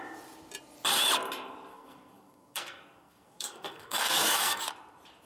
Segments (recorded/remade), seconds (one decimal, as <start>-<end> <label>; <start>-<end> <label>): 0.0-1.7 recorded; 1.7-4.6 remade; 4.6-5.3 recorded